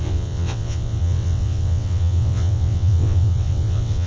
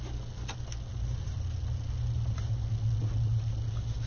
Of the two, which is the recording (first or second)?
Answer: second